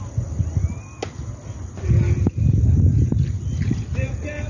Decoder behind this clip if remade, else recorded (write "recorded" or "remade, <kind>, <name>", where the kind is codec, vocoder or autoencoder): recorded